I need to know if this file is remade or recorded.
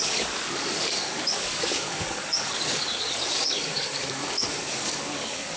remade